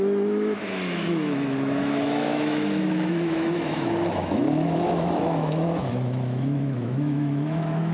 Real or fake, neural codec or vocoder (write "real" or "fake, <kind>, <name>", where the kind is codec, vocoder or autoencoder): fake, autoencoder, DAC-VAE